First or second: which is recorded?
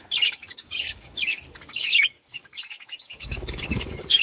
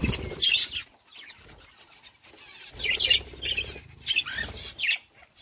second